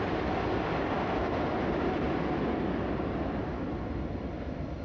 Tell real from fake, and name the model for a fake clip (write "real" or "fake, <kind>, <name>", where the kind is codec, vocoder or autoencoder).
real